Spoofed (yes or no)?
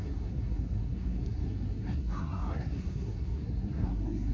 yes